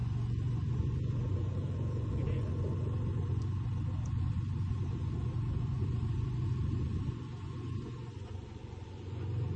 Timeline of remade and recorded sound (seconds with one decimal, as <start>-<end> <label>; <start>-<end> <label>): 0.0-9.6 remade